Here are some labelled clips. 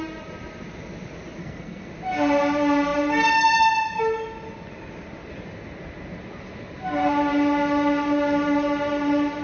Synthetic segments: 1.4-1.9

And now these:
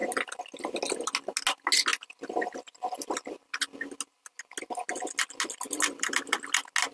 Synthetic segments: none

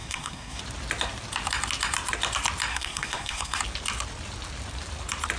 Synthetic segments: 0.0-0.6; 2.7-3.6

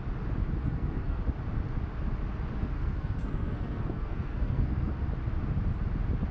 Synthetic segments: 0.6-1.2; 2.6-4.9